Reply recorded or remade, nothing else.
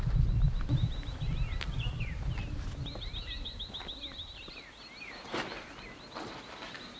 recorded